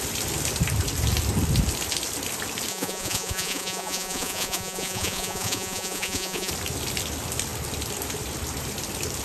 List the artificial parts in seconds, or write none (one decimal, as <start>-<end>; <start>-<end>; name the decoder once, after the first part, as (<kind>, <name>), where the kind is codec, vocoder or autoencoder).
2.7-6.5 (vocoder, Vocos)